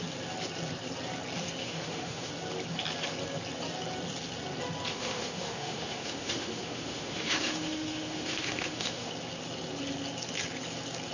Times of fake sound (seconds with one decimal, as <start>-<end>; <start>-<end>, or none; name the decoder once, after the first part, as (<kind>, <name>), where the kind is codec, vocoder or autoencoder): 1.6-2.3 (autoencoder, DAC-VAE); 4.9-9.1